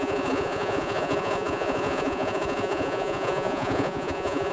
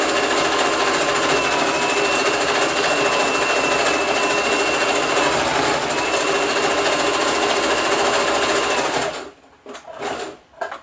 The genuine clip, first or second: second